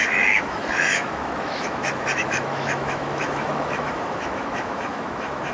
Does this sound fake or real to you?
fake